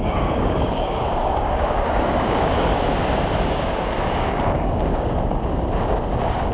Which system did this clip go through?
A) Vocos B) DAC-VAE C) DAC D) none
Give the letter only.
C